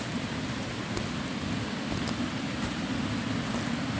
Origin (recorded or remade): recorded